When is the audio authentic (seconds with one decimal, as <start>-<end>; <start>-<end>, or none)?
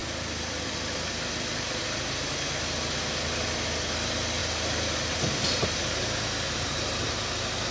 0.0-4.4; 7.2-7.7